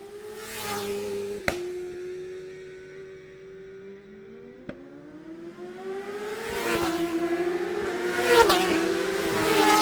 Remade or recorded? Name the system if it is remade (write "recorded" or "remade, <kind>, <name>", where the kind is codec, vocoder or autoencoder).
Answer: recorded